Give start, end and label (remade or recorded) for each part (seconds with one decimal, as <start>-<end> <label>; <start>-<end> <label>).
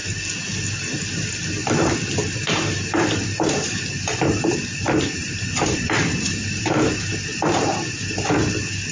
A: 0.0-0.7 recorded; 0.7-7.1 remade; 7.1-7.6 recorded; 7.6-8.9 remade